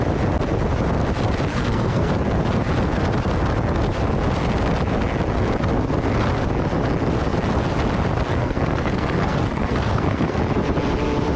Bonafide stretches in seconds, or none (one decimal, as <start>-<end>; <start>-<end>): 0.0-1.5; 2.1-8.3; 10.4-11.4